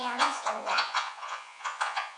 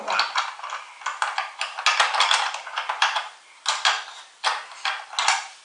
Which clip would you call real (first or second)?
second